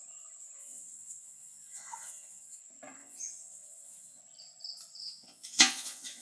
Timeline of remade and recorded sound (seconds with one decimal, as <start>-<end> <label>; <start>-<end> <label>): 0.0-0.6 recorded; 0.6-2.6 remade; 2.6-3.0 recorded; 3.0-4.2 remade; 4.2-5.0 recorded; 5.0-6.2 remade